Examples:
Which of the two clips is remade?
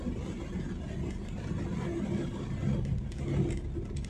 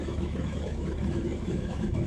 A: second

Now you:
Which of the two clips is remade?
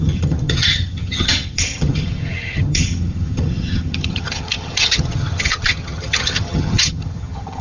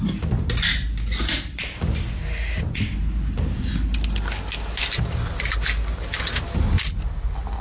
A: first